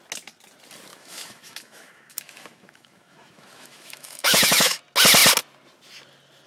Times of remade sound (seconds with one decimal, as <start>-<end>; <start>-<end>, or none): 0.9-4.8